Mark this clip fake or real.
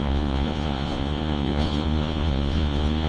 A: fake